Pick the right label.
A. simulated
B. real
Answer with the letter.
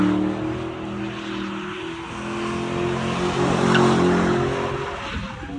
B